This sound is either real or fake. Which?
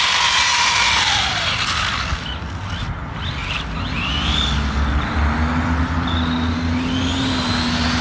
real